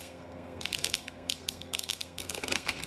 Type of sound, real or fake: fake